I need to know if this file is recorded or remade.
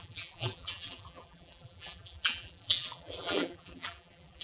remade